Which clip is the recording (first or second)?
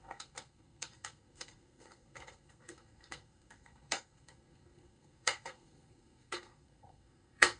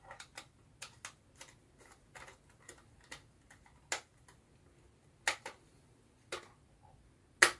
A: second